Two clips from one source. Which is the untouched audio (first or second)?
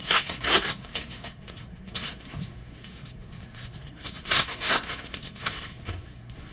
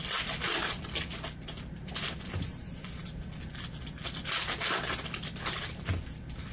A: second